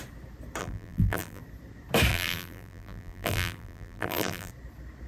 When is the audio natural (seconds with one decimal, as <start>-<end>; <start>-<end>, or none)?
0.0-0.6; 1.4-2.1; 4.5-5.1